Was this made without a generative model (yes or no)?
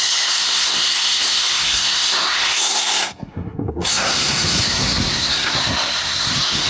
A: no